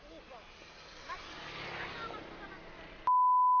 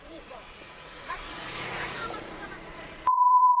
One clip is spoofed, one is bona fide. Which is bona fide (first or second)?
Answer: first